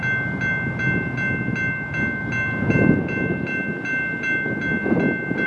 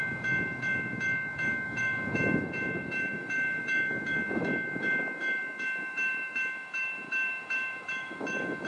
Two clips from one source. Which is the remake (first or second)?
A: second